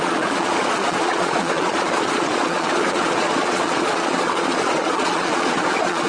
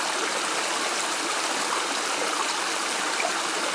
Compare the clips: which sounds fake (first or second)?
first